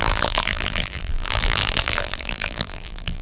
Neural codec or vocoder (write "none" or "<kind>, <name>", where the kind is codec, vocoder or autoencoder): vocoder, BigVGAN v2